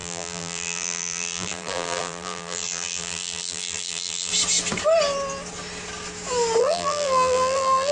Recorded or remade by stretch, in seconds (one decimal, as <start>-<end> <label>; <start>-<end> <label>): 0.0-4.3 remade; 4.3-6.6 recorded; 6.6-7.9 remade